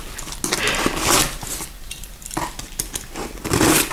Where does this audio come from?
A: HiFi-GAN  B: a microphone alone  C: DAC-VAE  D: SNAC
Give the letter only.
B